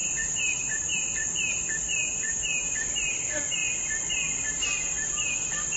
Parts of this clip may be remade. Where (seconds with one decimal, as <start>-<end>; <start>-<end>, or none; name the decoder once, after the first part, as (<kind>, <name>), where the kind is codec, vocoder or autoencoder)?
0.0-1.0 (vocoder, BigVGAN v2); 2.0-2.6